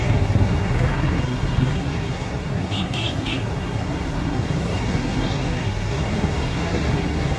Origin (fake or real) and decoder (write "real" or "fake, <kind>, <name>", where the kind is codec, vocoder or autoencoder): fake, codec, SNAC